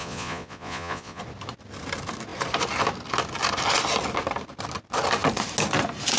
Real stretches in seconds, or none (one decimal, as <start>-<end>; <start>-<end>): 1.2-6.2